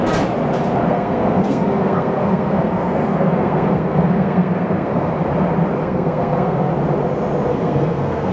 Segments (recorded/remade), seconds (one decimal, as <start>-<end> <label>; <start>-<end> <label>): 0.0-0.8 recorded; 0.8-5.1 remade; 5.1-5.8 recorded; 5.8-6.7 remade; 6.7-7.5 recorded; 7.5-8.3 remade